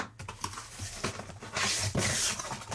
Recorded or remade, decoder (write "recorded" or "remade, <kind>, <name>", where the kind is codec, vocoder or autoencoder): recorded